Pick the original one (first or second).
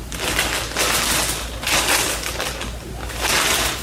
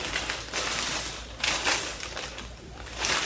first